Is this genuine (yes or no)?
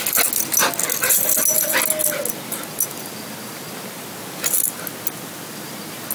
yes